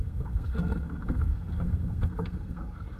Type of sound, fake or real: fake